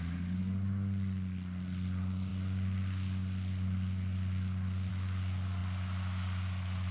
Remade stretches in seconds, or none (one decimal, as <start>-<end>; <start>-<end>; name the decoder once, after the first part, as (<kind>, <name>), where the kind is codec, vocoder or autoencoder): none